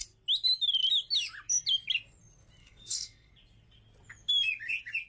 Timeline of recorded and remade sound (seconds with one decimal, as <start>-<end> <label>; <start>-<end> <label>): 0.0-2.6 recorded; 2.6-3.3 remade; 3.3-5.1 recorded